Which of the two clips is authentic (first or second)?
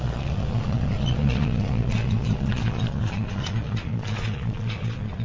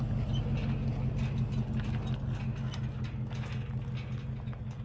second